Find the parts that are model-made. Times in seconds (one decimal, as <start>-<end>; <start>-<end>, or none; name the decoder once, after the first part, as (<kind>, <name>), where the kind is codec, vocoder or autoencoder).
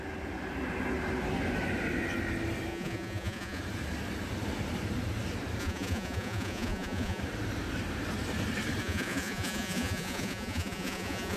2.7-3.6 (vocoder, Vocos); 5.6-7.2; 8.8-11.4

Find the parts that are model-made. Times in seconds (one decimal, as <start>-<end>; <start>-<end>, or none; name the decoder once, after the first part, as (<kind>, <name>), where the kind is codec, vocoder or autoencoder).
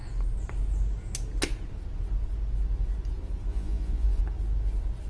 3.5-4.2 (vocoder, Vocos)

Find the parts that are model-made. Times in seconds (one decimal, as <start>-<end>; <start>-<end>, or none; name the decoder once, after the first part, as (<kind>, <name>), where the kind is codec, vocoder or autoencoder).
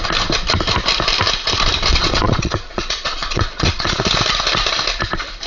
1.9-4.0 (vocoder, Vocos)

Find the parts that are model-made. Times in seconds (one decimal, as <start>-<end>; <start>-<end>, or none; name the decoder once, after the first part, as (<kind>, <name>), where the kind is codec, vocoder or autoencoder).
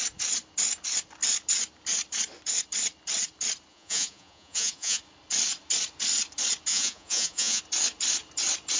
3.7-5.0 (vocoder, Vocos); 6.7-7.6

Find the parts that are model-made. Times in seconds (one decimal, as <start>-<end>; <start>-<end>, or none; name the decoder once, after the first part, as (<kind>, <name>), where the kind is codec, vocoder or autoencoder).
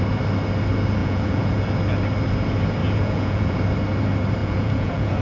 1.0-1.6 (vocoder, Vocos); 2.8-3.6; 4.4-5.2